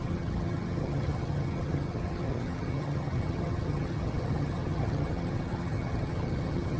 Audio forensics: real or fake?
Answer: fake